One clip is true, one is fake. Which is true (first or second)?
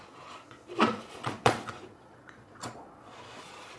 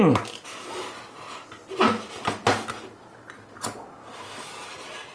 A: second